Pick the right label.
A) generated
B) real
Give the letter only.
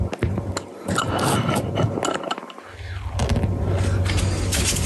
B